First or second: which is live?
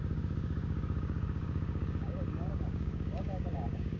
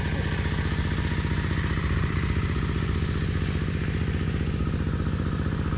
second